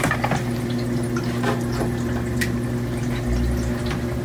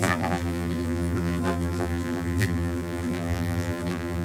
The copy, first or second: second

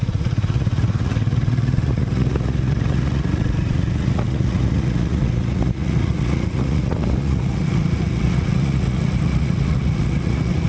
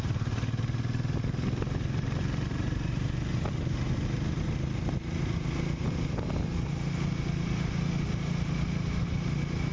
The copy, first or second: first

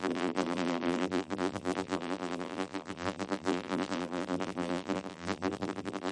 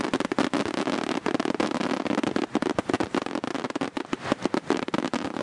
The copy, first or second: first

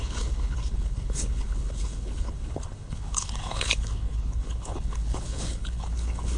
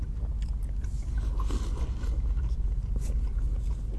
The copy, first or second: first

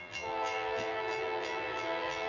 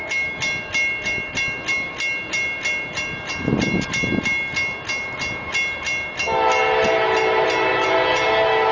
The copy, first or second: first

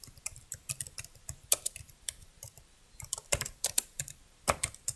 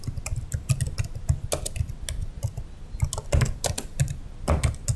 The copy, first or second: first